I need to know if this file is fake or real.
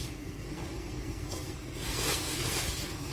fake